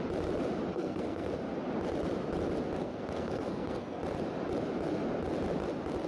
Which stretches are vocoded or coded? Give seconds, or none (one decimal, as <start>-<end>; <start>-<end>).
0.7-1.3; 2.8-4.0